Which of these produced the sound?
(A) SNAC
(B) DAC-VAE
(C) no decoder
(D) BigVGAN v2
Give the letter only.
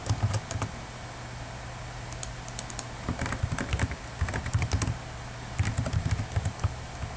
C